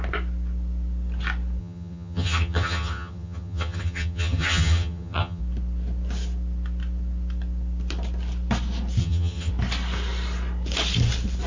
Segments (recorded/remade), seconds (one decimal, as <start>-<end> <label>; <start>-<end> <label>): 0.0-1.6 recorded; 1.6-5.4 remade; 5.4-9.0 recorded; 9.0-9.5 remade; 9.5-11.5 recorded

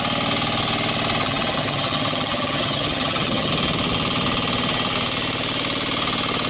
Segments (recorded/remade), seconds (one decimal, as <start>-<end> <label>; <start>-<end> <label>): 0.0-1.2 recorded; 1.2-3.5 remade; 3.5-6.5 recorded

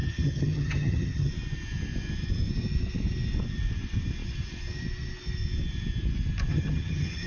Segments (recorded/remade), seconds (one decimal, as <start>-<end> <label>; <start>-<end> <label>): 0.0-1.3 remade; 1.3-6.5 recorded; 6.5-7.3 remade